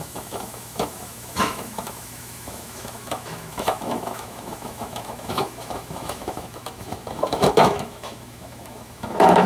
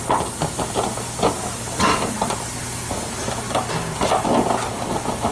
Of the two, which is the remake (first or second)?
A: first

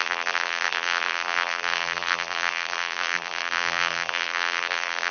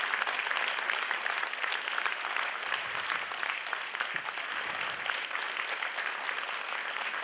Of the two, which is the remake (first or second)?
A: first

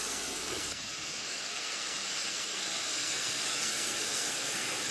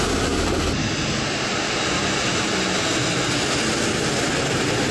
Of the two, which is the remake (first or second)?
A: first